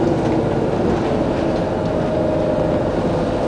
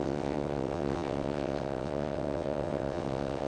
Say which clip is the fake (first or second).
second